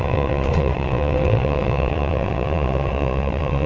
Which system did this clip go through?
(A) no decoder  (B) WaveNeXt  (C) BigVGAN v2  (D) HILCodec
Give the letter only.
B